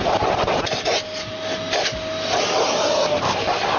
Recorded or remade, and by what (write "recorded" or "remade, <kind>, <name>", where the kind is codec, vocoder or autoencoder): recorded